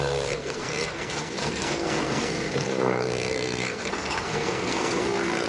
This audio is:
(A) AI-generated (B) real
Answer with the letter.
A